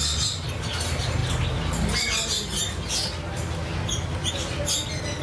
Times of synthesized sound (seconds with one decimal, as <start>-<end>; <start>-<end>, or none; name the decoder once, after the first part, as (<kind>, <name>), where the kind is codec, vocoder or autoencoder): none